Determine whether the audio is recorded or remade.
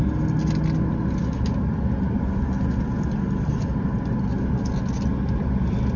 recorded